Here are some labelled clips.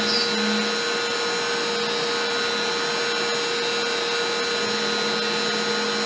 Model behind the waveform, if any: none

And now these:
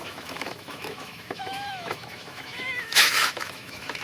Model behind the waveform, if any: autoencoder, DAC-VAE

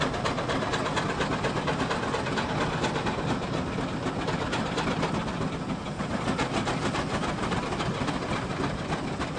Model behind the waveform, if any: none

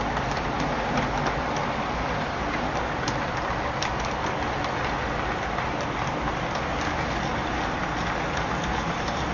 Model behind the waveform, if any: none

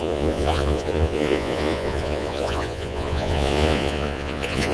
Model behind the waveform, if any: vocoder, Vocos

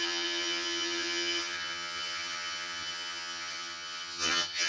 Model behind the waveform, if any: vocoder, HiFi-GAN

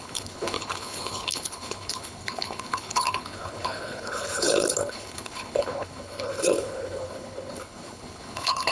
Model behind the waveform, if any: codec, HILCodec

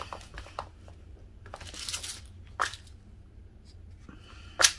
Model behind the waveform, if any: none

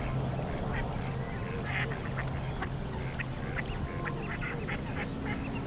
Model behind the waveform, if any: none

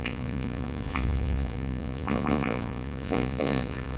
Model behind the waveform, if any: vocoder, Vocos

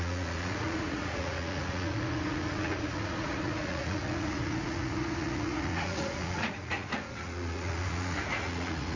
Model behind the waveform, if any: vocoder, Vocos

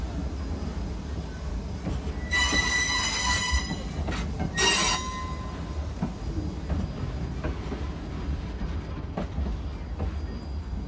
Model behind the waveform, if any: none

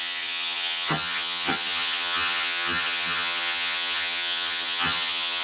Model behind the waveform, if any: vocoder, HiFi-GAN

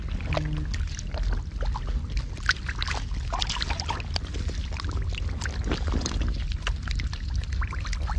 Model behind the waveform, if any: none